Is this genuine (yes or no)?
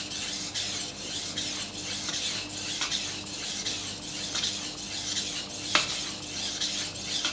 yes